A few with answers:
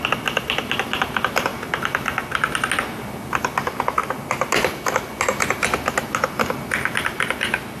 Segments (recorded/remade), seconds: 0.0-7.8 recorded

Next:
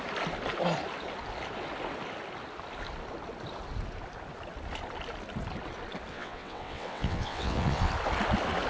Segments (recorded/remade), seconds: 0.0-6.1 recorded; 6.1-7.9 remade; 7.9-8.7 recorded

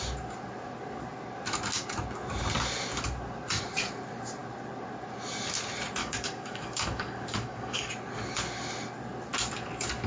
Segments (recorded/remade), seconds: 0.0-6.0 recorded; 6.0-7.9 remade; 7.9-10.1 recorded

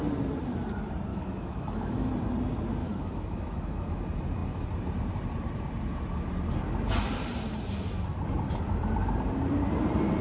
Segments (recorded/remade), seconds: 0.0-1.1 recorded; 1.1-2.1 remade; 2.1-2.8 recorded; 2.8-4.0 remade; 4.0-10.2 recorded

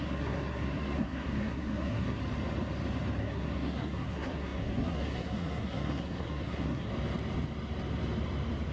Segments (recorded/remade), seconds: 0.0-2.2 remade; 2.2-3.2 recorded; 3.2-6.9 remade; 6.9-8.7 recorded